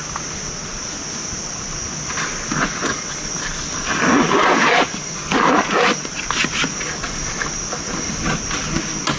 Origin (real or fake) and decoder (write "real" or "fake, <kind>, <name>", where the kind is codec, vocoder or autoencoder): real